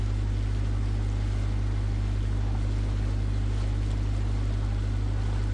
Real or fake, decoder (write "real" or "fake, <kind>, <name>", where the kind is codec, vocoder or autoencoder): real